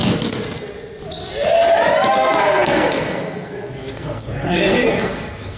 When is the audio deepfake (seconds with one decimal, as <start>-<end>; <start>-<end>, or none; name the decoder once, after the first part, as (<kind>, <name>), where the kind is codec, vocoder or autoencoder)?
2.1-5.6 (codec, SNAC)